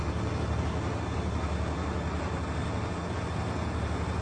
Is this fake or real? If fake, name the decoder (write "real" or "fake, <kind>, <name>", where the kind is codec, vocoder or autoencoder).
real